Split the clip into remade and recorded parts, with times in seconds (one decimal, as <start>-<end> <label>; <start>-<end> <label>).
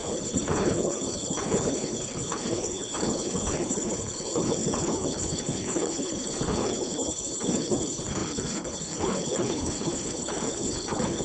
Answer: 0.0-11.2 remade